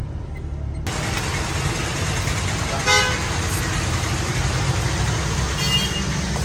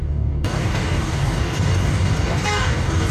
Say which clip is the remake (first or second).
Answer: second